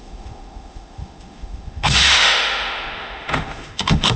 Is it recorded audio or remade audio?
remade